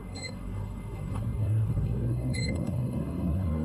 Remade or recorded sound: remade